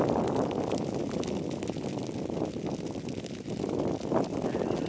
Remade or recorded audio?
recorded